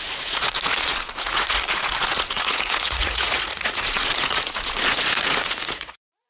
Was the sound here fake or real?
fake